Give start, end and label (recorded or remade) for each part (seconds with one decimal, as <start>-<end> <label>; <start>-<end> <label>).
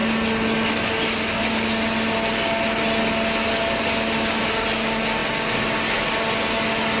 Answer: 0.0-7.0 recorded